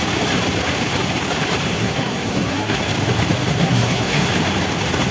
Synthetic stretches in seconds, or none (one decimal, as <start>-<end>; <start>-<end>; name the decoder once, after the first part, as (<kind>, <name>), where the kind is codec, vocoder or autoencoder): 1.7-2.8 (codec, SNAC); 3.5-4.3